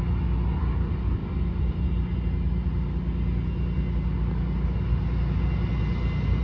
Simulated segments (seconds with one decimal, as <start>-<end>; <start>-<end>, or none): none